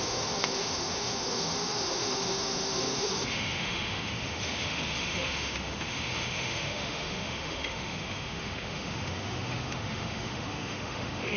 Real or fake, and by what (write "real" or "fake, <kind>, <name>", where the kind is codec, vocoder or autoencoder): fake, autoencoder, DAC-VAE